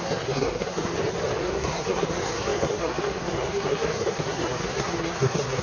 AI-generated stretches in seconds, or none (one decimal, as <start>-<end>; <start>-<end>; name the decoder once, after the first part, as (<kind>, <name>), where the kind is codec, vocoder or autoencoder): 0.0-0.9 (codec, SNAC); 1.4-5.6